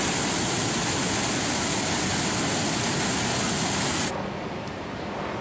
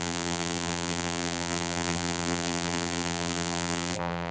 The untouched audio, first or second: first